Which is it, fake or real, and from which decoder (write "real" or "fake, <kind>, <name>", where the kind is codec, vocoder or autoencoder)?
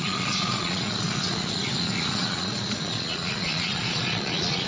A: fake, vocoder, Vocos